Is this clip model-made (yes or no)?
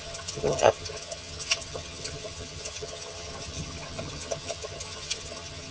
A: yes